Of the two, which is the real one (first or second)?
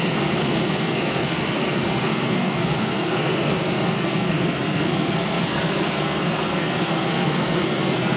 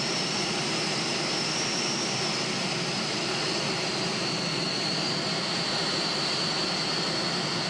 second